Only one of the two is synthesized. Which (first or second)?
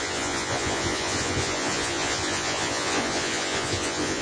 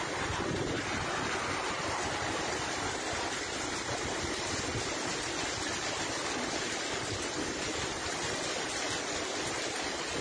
first